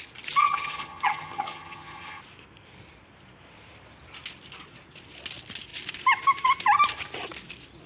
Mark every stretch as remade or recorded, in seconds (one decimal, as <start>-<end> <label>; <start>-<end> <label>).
0.0-0.4 recorded; 0.4-2.2 remade; 2.2-7.9 recorded